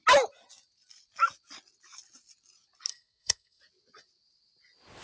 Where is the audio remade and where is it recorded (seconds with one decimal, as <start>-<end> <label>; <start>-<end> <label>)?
0.0-2.9 recorded; 2.9-3.6 remade; 3.6-5.0 recorded